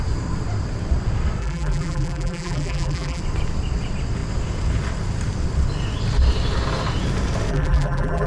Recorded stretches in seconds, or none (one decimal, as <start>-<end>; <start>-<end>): 0.0-1.4; 3.2-7.5